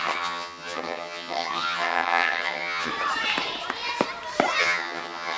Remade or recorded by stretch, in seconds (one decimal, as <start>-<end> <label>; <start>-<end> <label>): 0.0-2.9 remade; 2.9-4.6 recorded; 4.6-5.4 remade